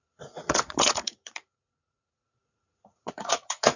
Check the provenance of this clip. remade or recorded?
remade